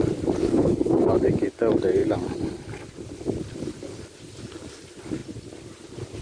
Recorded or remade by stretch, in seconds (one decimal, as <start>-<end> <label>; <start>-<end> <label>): 0.0-0.4 recorded; 0.4-0.9 remade; 0.9-6.2 recorded